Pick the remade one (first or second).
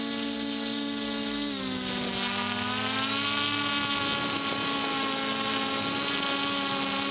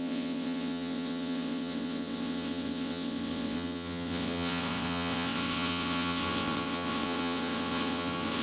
second